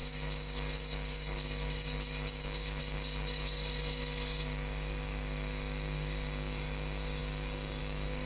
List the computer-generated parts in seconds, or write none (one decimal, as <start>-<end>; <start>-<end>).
0.0-8.3